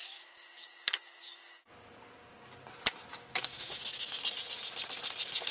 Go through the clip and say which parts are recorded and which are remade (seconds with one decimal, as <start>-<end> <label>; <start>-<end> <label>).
0.0-1.7 remade; 1.7-3.1 recorded; 3.1-4.2 remade; 4.2-5.5 recorded